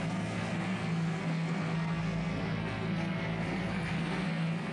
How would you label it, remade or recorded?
remade